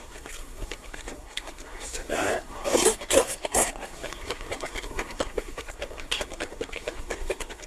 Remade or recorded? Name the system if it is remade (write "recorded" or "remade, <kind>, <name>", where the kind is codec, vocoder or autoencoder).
remade, codec, SNAC